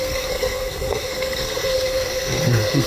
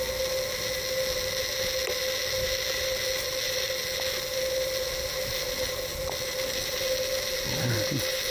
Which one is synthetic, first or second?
first